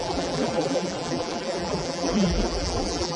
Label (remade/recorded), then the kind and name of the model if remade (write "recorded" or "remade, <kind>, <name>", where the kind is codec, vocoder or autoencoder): remade, vocoder, BigVGAN v2